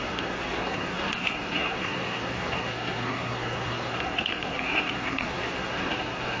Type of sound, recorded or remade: remade